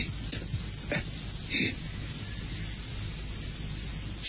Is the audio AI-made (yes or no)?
no